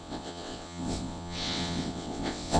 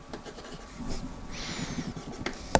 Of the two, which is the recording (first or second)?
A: second